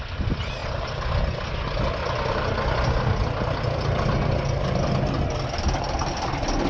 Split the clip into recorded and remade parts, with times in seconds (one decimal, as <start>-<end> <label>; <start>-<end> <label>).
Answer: 0.0-0.6 remade; 0.6-1.5 recorded; 1.5-2.0 remade; 2.0-6.0 recorded; 6.0-6.7 remade